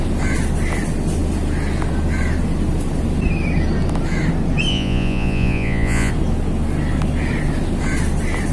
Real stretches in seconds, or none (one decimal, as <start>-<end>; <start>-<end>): 0.0-4.7; 6.1-8.5